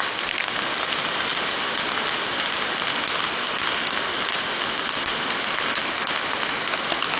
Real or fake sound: real